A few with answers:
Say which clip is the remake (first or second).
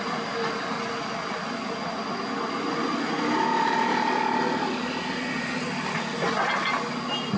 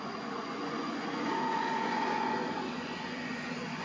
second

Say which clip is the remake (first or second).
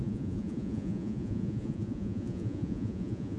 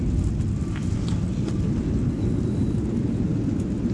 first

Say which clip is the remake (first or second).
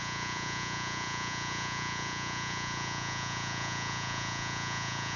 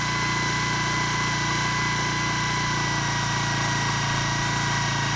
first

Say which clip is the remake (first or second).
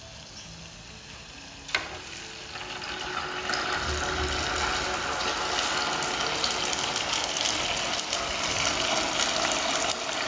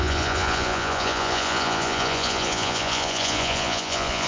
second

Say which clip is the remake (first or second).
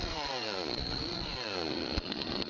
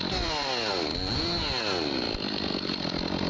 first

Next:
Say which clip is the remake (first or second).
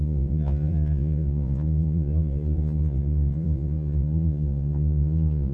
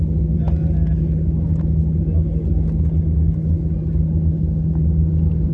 first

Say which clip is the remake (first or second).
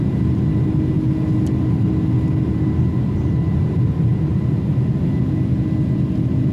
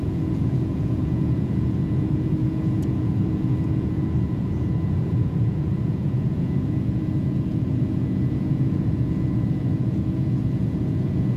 second